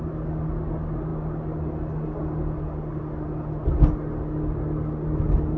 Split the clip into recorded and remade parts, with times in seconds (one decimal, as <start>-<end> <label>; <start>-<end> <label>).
0.0-5.6 recorded